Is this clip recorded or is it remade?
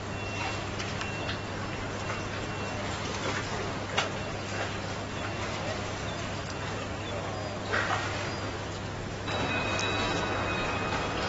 recorded